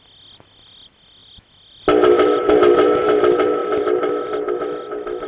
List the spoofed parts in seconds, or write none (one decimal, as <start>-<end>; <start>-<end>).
1.2-2.5; 3.6-4.5